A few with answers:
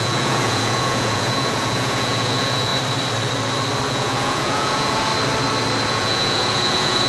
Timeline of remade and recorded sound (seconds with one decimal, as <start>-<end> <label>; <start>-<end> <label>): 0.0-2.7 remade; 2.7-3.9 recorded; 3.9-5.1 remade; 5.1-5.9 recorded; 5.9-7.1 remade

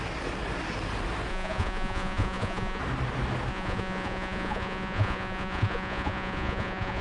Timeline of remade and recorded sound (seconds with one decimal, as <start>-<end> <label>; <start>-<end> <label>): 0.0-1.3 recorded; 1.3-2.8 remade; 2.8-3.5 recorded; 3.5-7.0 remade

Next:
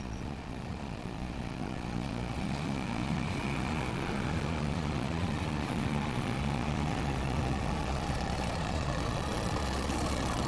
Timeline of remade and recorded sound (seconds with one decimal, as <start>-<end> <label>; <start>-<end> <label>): 0.0-10.5 remade

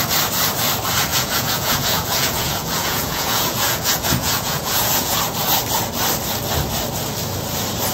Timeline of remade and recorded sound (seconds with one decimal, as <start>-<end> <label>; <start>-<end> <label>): 0.0-1.1 recorded; 1.1-5.2 remade; 5.2-7.9 recorded

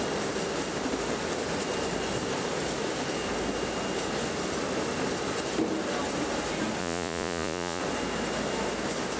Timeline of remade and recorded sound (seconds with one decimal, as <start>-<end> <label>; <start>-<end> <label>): 0.0-6.8 recorded; 6.8-7.8 remade; 7.8-9.2 recorded

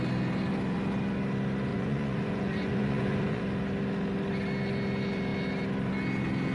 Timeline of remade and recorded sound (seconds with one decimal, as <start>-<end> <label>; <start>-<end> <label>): 0.0-1.7 recorded; 1.7-3.4 remade; 3.4-6.5 recorded

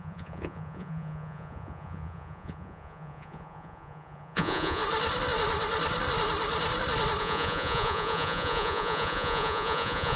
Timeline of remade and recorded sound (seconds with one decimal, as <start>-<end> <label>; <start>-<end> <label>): 0.0-4.8 remade; 4.8-7.2 recorded; 7.2-10.2 remade